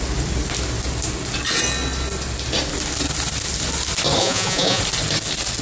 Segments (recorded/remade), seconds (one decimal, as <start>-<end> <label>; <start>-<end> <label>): 0.0-4.2 recorded; 4.2-4.8 remade; 4.8-5.6 recorded